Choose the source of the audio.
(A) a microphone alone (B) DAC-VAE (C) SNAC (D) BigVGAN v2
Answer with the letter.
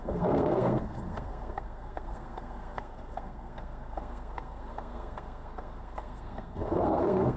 C